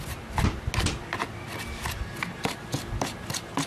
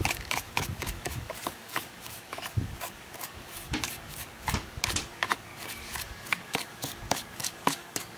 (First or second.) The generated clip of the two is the second